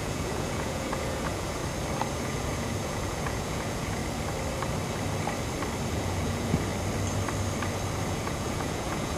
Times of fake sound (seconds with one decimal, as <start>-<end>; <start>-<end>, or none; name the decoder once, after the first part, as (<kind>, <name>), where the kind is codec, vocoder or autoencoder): 0.0-1.6 (vocoder, Vocos); 2.1-4.0; 5.9-6.7; 8.1-9.2